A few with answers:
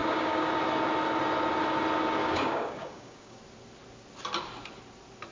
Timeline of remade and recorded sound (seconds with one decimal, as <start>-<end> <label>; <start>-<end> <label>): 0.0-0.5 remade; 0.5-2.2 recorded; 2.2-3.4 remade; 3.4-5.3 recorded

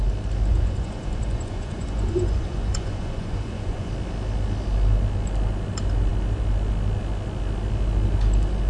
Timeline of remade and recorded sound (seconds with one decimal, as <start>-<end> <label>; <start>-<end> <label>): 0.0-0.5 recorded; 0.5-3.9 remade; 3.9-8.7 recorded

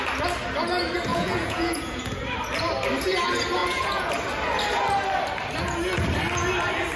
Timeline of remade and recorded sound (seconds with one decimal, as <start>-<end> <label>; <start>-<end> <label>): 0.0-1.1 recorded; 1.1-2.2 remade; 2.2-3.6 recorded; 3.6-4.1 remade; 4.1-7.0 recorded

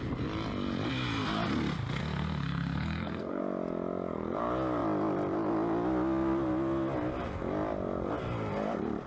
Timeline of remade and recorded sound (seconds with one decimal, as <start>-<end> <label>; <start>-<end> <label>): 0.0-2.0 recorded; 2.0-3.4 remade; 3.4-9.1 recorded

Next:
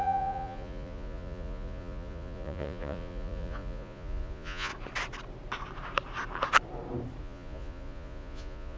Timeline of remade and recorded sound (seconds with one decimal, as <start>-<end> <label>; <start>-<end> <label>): 0.0-4.7 remade; 4.7-7.2 recorded; 7.2-8.8 remade

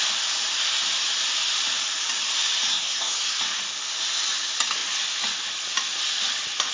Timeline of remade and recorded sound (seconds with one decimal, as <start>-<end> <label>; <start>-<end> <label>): 0.0-2.7 recorded; 2.7-3.4 remade; 3.4-6.7 recorded